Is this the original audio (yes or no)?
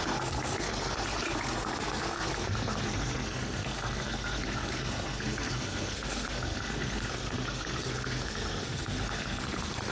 no